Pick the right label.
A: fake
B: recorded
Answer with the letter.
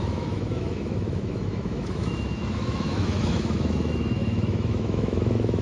A